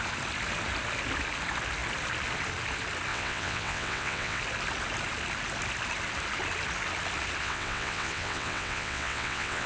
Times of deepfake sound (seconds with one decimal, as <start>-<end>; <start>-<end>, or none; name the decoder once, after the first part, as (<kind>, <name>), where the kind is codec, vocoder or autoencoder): 3.1-4.4 (vocoder, WaveNeXt); 7.4-9.7

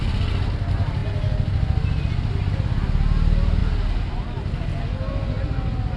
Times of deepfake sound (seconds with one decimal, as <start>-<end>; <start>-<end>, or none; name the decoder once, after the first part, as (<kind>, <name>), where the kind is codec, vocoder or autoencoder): none

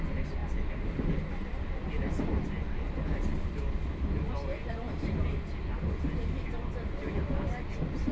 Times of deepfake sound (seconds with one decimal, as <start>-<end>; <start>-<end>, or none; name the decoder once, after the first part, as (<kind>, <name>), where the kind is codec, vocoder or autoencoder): none

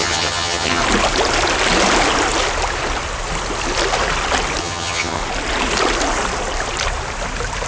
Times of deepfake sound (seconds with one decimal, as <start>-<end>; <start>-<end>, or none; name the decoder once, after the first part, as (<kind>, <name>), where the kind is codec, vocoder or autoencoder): 0.0-0.8 (vocoder, HiFi-GAN); 4.6-5.2

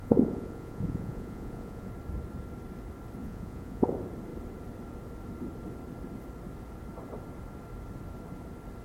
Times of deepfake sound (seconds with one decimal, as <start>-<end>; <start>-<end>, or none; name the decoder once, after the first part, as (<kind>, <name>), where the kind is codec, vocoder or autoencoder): 0.0-1.9 (vocoder, Vocos); 3.2-3.9

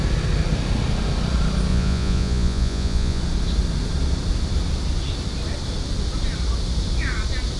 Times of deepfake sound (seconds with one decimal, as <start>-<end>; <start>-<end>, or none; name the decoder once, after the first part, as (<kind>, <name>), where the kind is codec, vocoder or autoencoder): 1.7-3.2 (vocoder, Vocos)